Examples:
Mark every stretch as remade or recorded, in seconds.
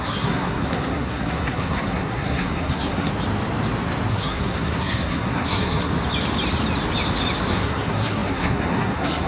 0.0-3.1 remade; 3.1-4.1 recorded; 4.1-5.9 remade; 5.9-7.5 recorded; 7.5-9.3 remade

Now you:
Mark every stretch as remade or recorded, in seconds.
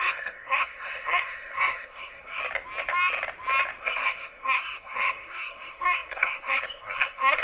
0.0-2.4 remade; 2.4-3.8 recorded; 3.8-7.4 remade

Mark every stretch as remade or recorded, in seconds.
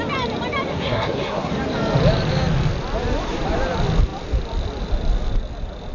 0.0-0.7 recorded; 0.7-1.5 remade; 1.5-5.9 recorded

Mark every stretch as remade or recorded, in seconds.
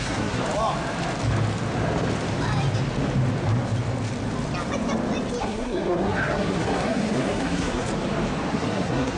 0.0-0.4 remade; 0.4-5.4 recorded; 5.4-7.9 remade; 7.9-8.5 recorded; 8.5-9.2 remade